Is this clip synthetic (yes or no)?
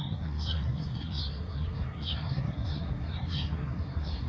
yes